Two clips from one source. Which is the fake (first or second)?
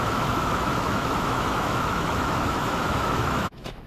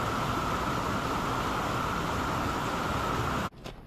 first